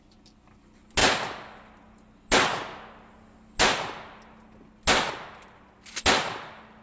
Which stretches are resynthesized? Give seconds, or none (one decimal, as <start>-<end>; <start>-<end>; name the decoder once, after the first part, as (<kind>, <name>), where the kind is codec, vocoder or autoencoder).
none